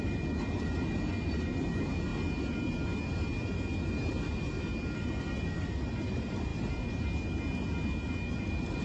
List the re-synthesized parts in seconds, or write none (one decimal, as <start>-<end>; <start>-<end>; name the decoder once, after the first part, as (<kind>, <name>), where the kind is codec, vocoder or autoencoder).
0.0-2.1 (vocoder, BigVGAN v2); 5.2-6.5; 8.3-8.8